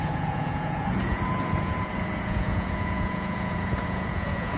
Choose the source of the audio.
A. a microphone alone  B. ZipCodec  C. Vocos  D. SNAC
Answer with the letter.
C